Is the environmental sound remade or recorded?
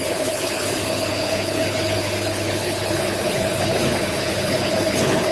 remade